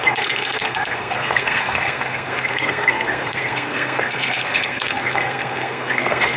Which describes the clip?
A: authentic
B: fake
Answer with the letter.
B